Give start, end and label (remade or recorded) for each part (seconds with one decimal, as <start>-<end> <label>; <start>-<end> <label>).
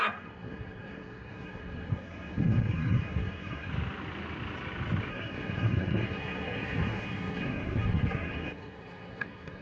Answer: 0.0-3.7 remade; 3.7-5.1 recorded; 5.1-9.6 remade